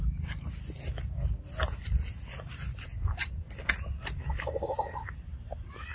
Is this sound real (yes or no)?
yes